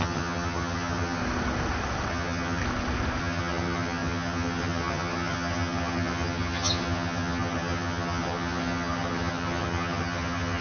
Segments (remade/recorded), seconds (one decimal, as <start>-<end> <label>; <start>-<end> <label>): 0.0-1.2 remade; 1.2-2.1 recorded; 2.1-2.6 remade; 2.6-3.2 recorded; 3.2-10.6 remade